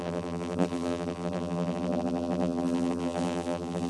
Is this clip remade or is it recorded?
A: remade